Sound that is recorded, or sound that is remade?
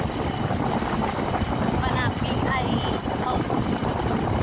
recorded